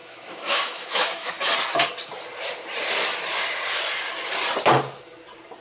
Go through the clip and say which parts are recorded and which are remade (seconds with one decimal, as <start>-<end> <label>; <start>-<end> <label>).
0.0-1.3 remade; 1.3-5.6 recorded